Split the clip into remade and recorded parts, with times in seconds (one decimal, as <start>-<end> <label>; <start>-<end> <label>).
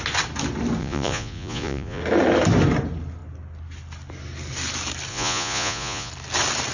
0.0-0.8 recorded; 0.8-2.0 remade; 2.0-5.1 recorded; 5.1-6.1 remade; 6.1-6.7 recorded